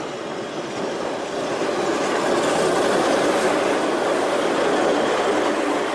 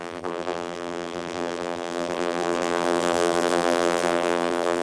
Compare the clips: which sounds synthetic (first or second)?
second